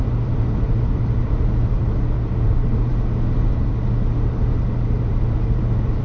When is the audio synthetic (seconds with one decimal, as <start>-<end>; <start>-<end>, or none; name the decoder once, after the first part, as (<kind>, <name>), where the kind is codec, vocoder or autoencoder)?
0.0-2.9 (vocoder, BigVGAN v2); 4.8-6.0